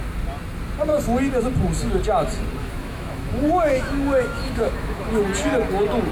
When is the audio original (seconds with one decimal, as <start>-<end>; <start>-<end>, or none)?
0.0-2.6; 5.2-6.1